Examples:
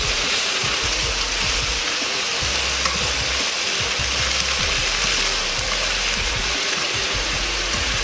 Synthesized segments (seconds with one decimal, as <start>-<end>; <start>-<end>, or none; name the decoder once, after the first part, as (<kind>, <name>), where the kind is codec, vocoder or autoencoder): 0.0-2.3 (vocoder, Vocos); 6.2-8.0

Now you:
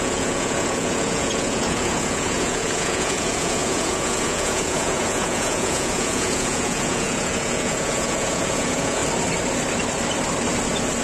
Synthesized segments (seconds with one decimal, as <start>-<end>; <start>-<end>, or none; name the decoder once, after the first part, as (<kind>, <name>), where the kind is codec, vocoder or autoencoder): 0.0-9.0 (vocoder, Vocos)

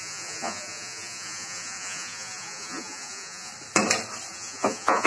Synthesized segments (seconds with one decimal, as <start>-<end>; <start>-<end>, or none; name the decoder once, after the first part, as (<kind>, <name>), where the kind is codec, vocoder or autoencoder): 0.0-3.5 (vocoder, Vocos); 4.3-5.1